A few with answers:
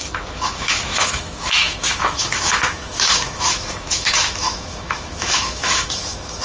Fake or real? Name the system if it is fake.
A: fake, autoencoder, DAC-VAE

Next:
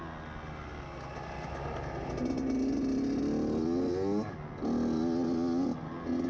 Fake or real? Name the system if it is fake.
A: real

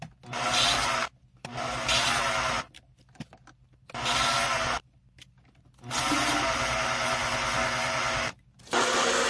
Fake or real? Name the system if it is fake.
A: real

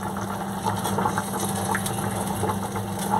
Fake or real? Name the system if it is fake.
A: real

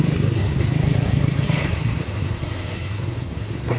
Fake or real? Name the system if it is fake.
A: fake, codec, SNAC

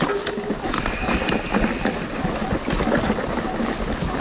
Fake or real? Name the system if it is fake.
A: real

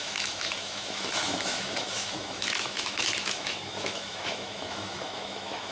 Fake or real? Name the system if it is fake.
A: fake, autoencoder, DAC-VAE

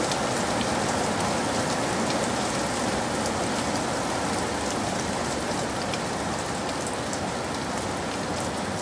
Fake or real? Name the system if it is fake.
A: real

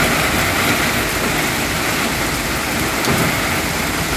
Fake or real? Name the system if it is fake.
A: real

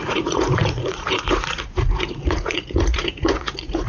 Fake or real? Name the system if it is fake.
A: fake, vocoder, Vocos